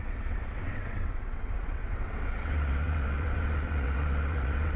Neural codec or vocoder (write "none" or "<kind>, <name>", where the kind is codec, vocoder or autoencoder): vocoder, WaveNeXt